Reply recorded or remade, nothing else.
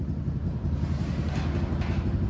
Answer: recorded